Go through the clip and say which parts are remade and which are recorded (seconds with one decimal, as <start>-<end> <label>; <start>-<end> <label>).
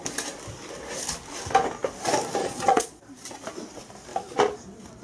0.0-2.4 recorded; 2.4-3.0 remade; 3.0-5.0 recorded